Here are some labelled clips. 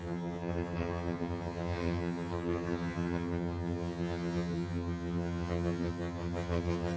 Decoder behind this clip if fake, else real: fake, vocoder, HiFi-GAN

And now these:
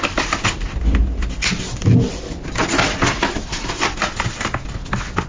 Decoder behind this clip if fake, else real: real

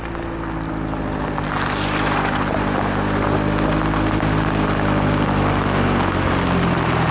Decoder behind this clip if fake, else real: real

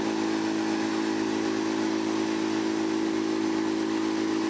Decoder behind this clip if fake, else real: real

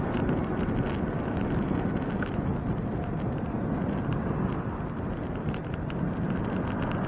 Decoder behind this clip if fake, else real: real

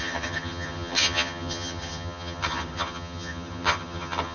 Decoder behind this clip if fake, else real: fake, vocoder, HiFi-GAN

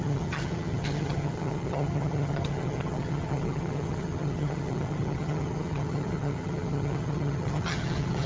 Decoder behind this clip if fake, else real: fake, vocoder, HiFi-GAN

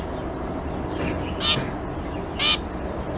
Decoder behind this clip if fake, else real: real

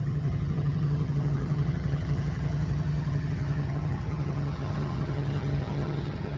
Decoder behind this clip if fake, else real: fake, vocoder, HiFi-GAN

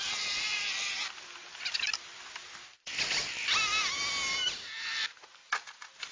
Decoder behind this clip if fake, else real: real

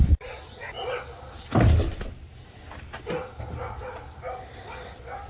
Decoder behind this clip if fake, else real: real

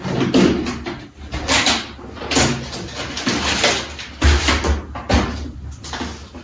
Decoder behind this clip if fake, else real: real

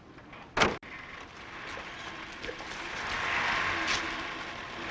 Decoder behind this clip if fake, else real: real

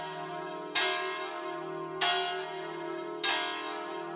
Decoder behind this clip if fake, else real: real